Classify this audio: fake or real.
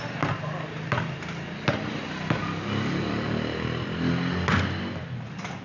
real